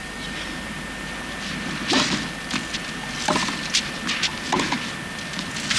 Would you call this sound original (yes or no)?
yes